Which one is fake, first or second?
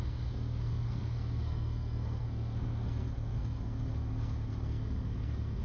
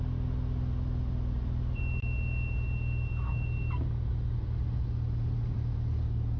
first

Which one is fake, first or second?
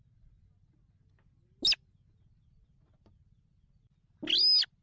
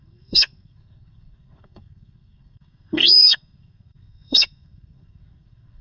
second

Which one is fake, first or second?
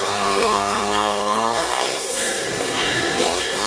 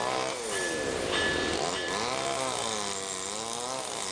first